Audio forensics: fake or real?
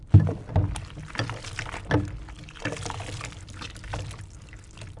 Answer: real